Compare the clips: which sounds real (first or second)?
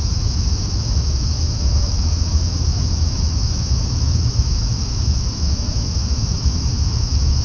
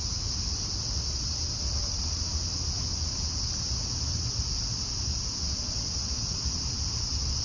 second